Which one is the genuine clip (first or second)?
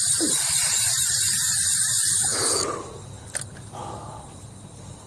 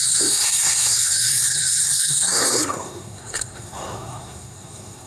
first